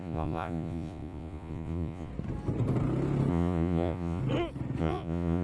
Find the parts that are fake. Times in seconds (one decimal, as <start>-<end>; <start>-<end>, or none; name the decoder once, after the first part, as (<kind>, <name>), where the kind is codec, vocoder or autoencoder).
0.0-2.1 (vocoder, Vocos); 3.3-4.2; 4.8-5.4